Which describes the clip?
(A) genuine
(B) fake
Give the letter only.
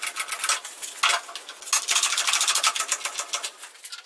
A